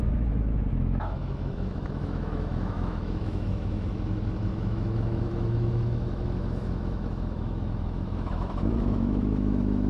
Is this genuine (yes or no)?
no